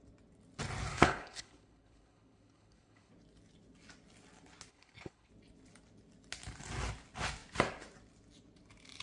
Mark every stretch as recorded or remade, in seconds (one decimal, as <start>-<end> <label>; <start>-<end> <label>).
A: 0.0-0.9 recorded; 0.9-3.1 remade; 3.1-4.7 recorded; 4.7-5.3 remade; 5.3-9.0 recorded

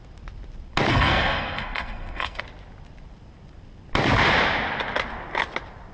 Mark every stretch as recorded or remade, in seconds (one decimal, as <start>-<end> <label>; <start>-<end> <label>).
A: 0.0-0.9 recorded; 0.9-2.4 remade; 2.4-5.9 recorded

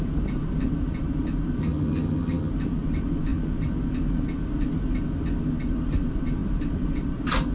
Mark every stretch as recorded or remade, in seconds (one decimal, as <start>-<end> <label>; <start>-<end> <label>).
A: 0.0-1.6 recorded; 1.6-2.5 remade; 2.5-7.5 recorded

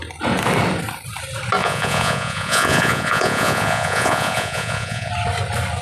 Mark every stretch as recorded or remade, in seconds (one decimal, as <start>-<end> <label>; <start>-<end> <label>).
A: 0.0-1.6 recorded; 1.6-5.1 remade; 5.1-5.8 recorded

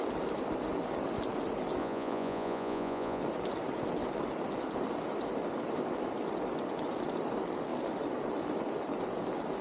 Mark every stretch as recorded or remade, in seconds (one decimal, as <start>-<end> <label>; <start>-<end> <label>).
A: 0.0-1.8 recorded; 1.8-3.2 remade; 3.2-9.6 recorded

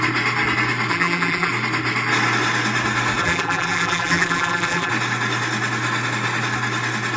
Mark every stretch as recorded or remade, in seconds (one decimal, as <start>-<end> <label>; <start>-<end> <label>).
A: 0.0-0.9 recorded; 0.9-1.5 remade; 1.5-3.2 recorded; 3.2-4.9 remade; 4.9-7.2 recorded

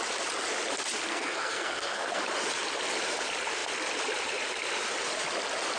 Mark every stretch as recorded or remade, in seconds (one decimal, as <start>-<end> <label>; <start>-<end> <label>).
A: 0.0-1.1 recorded; 1.1-2.2 remade; 2.2-5.8 recorded